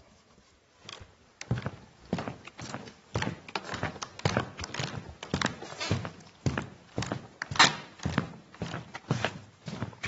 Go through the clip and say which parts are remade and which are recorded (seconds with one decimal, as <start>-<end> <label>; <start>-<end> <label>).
0.0-9.0 recorded; 9.0-10.1 remade